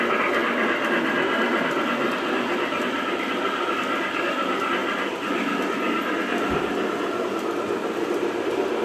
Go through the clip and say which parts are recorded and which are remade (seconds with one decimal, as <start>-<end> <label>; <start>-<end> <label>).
0.0-8.8 recorded